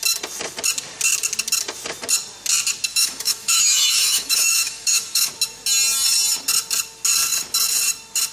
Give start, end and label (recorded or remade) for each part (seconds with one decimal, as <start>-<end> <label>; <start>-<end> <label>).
0.0-2.9 recorded; 2.9-5.3 remade; 5.3-8.3 recorded